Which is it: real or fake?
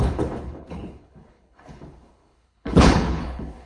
fake